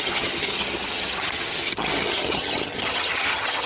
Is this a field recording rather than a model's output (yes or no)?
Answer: no